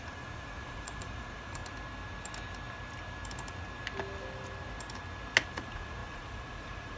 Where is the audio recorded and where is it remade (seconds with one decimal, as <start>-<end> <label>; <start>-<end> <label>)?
0.0-1.6 remade; 1.6-5.5 recorded; 5.5-7.0 remade